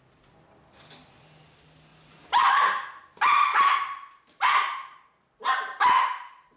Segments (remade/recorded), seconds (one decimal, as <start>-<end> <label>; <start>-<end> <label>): 0.0-1.9 recorded; 1.9-2.6 remade; 2.6-3.5 recorded; 3.5-6.6 remade